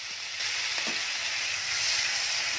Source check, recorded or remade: recorded